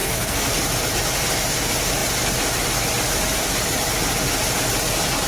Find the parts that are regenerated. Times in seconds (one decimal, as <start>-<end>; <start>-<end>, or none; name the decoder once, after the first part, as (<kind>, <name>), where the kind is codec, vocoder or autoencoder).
0.0-0.6 (codec, SNAC)